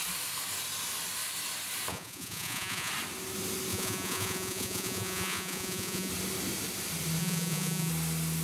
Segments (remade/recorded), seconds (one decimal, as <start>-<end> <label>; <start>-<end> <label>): 0.0-1.9 recorded; 1.9-2.9 remade; 2.9-3.7 recorded; 3.7-6.1 remade; 6.1-7.2 recorded; 7.2-7.9 remade; 7.9-8.4 recorded